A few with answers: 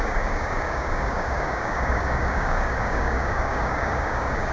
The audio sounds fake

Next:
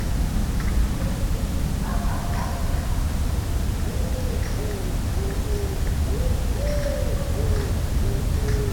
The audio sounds real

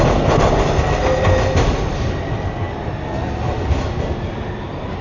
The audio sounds real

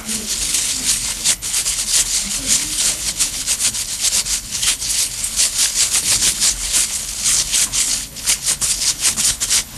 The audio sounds fake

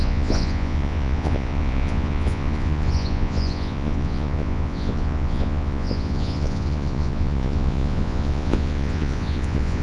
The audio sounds fake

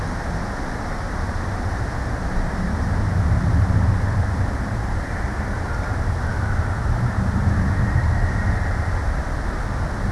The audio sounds real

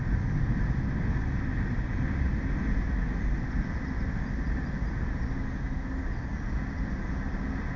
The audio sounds real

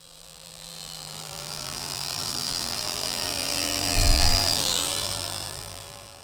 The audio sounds fake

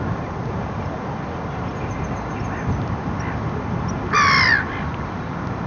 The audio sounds real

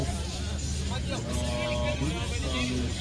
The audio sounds real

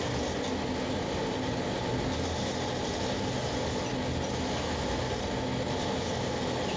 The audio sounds real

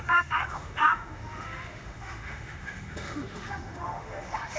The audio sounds fake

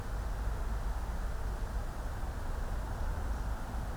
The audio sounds real